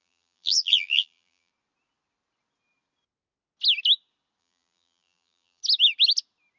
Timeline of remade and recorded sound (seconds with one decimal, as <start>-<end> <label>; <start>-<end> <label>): 0.0-1.5 remade; 1.5-4.4 recorded; 4.4-5.6 remade; 5.6-6.6 recorded